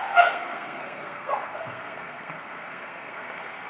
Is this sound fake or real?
fake